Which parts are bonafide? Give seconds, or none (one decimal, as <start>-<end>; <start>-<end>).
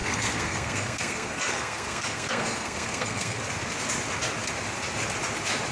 3.4-5.7